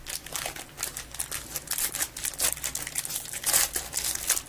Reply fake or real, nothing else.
real